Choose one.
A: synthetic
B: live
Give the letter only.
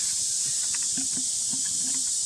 A